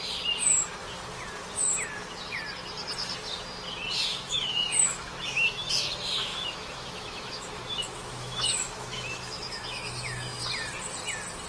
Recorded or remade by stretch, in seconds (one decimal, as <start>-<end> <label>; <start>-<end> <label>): 0.0-4.1 recorded; 4.1-5.7 remade; 5.7-6.3 recorded; 6.3-10.4 remade; 10.4-11.5 recorded